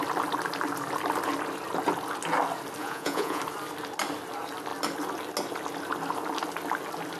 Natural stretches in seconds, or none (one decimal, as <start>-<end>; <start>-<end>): 0.0-2.8; 3.4-7.2